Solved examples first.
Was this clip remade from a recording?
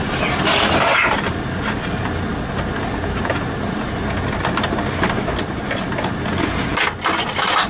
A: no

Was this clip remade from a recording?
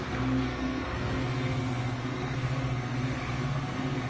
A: yes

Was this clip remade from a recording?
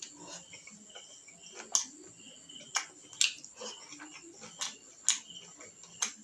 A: no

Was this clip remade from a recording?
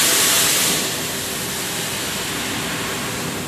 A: no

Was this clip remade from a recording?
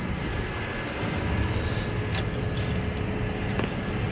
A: no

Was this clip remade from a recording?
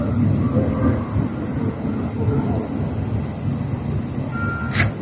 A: no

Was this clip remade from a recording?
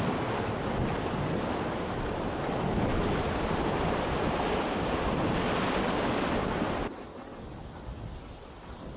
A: no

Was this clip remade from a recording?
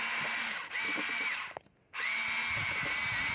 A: no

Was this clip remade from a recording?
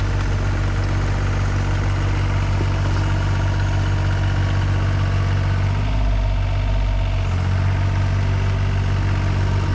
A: no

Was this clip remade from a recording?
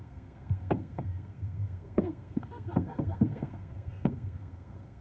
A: yes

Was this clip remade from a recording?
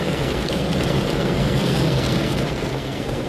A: yes